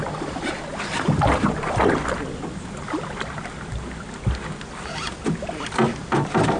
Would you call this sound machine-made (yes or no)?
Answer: no